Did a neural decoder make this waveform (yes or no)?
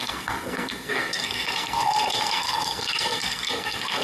yes